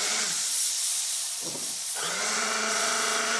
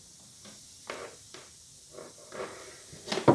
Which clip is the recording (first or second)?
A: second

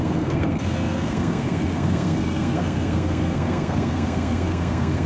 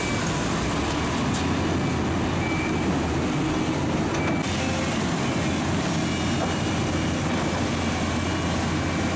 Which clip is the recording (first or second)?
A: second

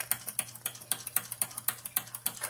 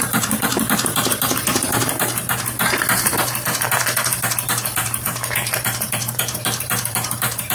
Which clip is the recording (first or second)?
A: first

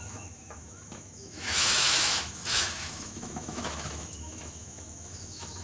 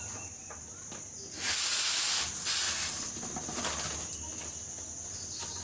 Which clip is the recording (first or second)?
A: second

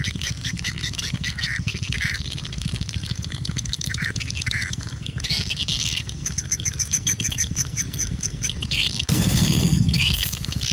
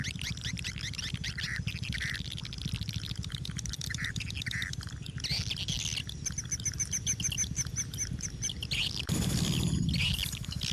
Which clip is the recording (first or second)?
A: second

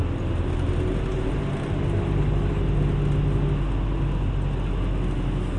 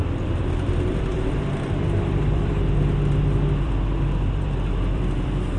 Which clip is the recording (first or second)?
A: first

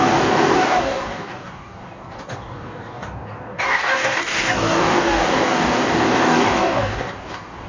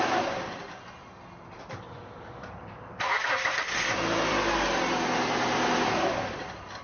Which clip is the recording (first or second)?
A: second